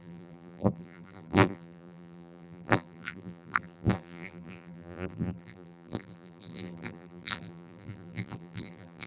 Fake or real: fake